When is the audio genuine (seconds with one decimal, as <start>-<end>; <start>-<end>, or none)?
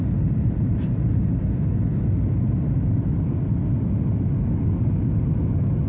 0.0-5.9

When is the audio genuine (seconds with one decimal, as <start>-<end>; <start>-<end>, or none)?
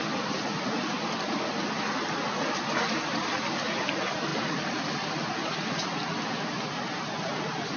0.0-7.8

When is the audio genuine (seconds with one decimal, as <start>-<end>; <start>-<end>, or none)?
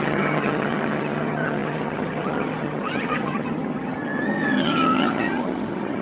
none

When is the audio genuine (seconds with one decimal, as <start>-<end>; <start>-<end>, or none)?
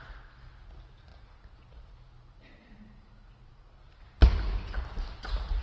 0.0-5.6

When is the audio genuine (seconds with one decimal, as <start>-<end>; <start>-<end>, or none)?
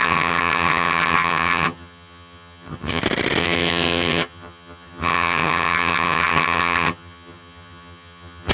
3.0-3.4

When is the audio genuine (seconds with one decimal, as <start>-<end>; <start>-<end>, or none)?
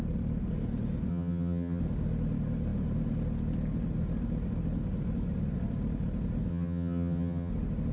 0.0-1.1; 1.8-6.5; 7.5-7.9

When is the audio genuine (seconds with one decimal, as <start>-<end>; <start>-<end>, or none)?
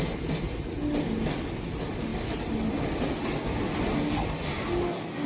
0.0-5.3